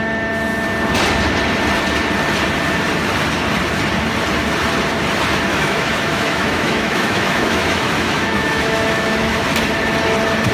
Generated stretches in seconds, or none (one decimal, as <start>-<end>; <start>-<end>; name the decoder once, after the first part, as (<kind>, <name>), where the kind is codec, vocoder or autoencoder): 5.5-9.4 (autoencoder, DAC-VAE)